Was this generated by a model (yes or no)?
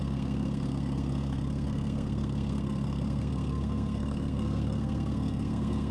yes